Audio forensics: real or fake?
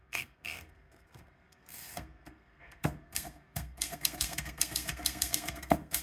fake